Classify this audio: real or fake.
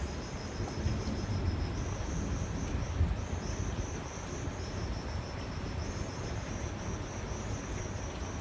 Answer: real